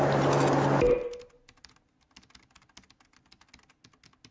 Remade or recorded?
recorded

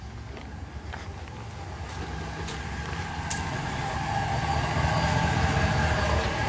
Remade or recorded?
recorded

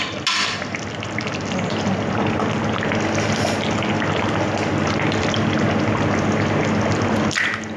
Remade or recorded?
recorded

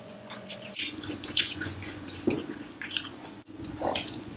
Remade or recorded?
remade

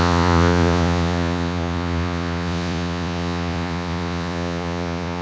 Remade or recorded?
remade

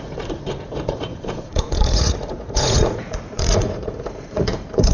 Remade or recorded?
remade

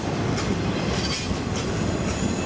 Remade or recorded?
recorded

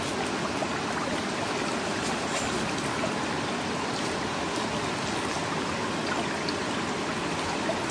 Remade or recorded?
recorded